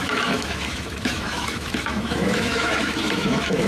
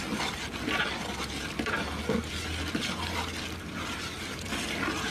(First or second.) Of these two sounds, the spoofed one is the first